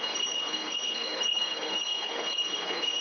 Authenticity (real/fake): fake